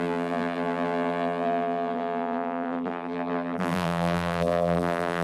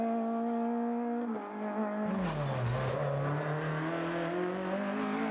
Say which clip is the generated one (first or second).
first